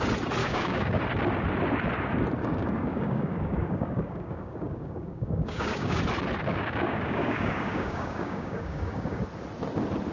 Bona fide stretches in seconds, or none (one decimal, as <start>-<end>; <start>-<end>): 0.0-0.4; 1.0-2.4; 6.0-6.5; 9.2-10.1